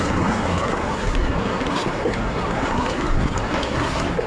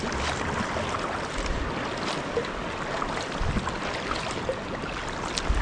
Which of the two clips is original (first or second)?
second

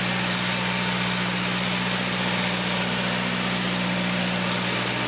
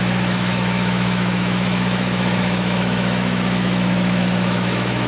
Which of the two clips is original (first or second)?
first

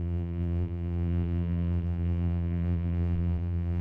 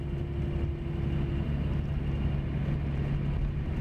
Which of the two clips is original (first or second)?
second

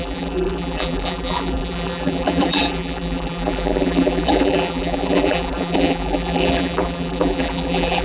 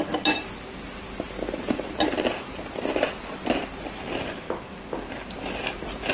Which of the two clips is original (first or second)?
second